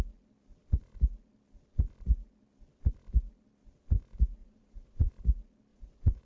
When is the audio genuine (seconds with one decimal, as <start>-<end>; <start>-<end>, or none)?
0.0-4.4; 5.1-5.7